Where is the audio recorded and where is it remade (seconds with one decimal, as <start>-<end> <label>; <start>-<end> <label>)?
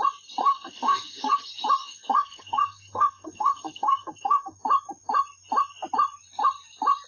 0.0-0.4 recorded; 0.4-1.4 remade; 1.4-1.8 recorded; 1.8-4.6 remade; 4.6-7.1 recorded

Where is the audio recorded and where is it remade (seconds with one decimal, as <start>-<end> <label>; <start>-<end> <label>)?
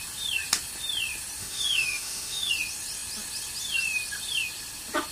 0.0-1.4 recorded; 1.4-2.5 remade; 2.5-5.1 recorded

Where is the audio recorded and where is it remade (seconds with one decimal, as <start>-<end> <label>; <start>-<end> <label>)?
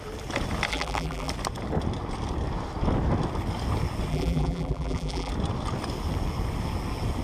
0.0-0.7 recorded; 0.7-1.3 remade; 1.3-4.1 recorded; 4.1-5.3 remade; 5.3-7.2 recorded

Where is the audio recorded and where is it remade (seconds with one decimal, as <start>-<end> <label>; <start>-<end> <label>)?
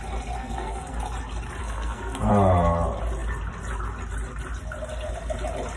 0.0-0.4 recorded; 0.4-1.0 remade; 1.0-1.6 recorded; 1.6-2.3 remade; 2.3-5.8 recorded